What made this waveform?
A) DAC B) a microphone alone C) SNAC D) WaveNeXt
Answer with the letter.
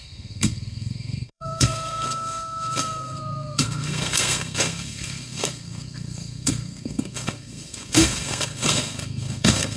C